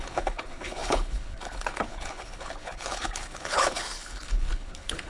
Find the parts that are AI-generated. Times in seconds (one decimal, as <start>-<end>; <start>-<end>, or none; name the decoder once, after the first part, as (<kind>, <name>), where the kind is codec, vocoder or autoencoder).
0.0-5.1 (codec, HILCodec)

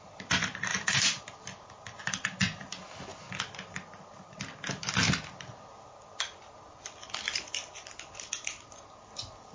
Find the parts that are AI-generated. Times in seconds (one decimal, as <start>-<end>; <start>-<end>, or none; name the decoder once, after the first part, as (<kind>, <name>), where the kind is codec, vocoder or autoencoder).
0.7-1.2 (vocoder, BigVGAN v2)

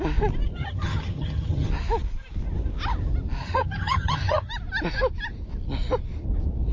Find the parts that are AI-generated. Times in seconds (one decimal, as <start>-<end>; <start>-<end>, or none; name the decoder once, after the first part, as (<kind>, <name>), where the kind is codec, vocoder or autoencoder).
0.6-1.7 (vocoder, HiFi-GAN); 3.4-4.5

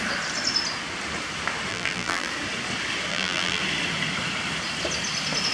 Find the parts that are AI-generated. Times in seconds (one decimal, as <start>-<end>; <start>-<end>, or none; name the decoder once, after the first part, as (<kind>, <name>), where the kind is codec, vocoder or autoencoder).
1.7-2.3 (vocoder, BigVGAN v2); 3.1-3.6

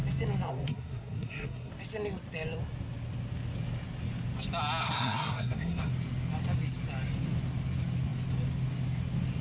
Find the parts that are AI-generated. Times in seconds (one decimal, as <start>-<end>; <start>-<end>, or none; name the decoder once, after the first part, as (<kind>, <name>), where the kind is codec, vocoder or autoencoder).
0.5-1.7 (codec, SNAC); 4.8-5.9

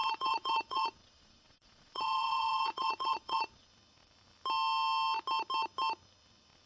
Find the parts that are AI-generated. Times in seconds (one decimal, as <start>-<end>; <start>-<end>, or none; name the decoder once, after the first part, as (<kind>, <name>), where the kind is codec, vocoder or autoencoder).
0.0-3.7 (vocoder, Vocos)